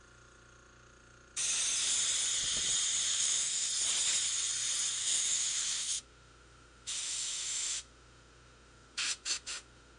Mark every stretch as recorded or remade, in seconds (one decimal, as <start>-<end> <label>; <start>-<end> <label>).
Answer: 0.0-3.1 recorded; 3.1-3.7 remade; 3.7-5.0 recorded; 5.0-10.0 remade